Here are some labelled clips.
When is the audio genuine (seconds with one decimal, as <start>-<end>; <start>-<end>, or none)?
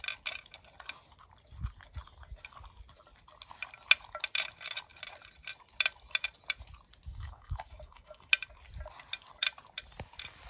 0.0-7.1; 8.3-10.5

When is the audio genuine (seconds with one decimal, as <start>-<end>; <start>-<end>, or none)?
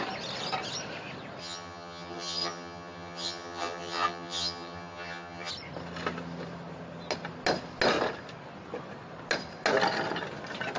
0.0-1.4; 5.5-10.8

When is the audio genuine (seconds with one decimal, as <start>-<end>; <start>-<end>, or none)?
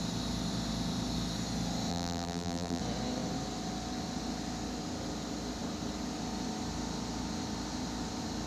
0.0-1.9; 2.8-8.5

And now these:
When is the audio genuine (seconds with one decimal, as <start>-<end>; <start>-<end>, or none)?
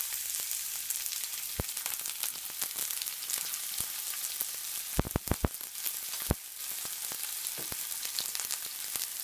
0.0-9.2